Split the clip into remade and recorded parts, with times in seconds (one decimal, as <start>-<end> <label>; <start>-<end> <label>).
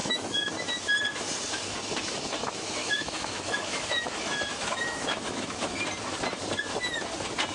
0.0-0.5 remade; 0.5-2.4 recorded; 2.4-5.7 remade; 5.7-7.5 recorded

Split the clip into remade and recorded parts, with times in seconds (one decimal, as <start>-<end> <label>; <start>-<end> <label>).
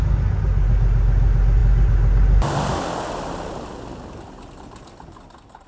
0.0-5.7 recorded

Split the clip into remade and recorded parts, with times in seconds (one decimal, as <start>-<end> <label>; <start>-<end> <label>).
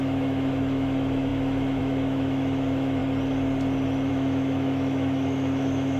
0.0-3.0 remade; 3.0-4.1 recorded; 4.1-6.0 remade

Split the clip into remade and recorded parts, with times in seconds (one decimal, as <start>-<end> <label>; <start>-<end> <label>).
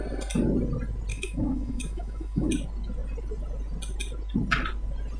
0.0-1.1 recorded; 1.1-2.5 remade; 2.5-5.2 recorded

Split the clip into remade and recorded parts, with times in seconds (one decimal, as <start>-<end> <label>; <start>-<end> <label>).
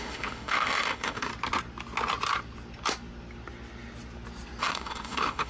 0.0-1.3 remade; 1.3-4.6 recorded; 4.6-5.5 remade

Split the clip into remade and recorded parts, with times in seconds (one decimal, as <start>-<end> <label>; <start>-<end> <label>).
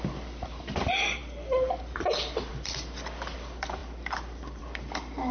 0.0-5.3 recorded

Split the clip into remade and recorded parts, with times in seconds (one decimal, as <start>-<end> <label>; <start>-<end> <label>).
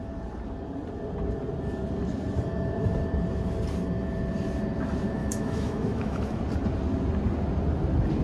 0.0-5.2 recorded; 5.2-6.4 remade; 6.4-8.2 recorded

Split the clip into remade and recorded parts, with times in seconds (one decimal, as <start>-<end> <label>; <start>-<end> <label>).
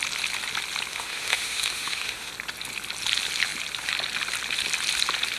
0.0-0.9 recorded; 0.9-2.3 remade; 2.3-5.4 recorded